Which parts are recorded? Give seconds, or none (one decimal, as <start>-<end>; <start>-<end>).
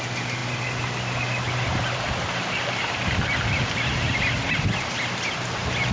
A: 0.0-5.9